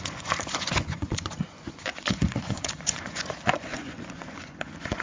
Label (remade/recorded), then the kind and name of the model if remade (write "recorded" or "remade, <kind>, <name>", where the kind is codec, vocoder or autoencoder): remade, vocoder, Vocos